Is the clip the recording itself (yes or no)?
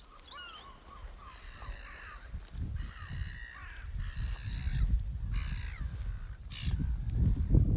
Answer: yes